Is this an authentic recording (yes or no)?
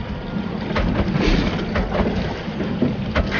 yes